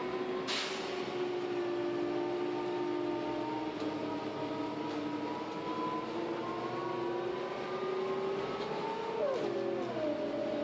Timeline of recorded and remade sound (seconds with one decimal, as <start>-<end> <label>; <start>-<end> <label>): 0.0-10.6 recorded